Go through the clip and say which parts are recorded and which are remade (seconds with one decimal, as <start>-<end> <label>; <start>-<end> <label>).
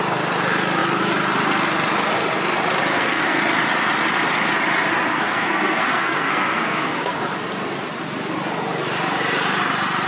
0.0-2.9 recorded; 2.9-3.4 remade; 3.4-5.1 recorded; 5.1-7.2 remade; 7.2-10.1 recorded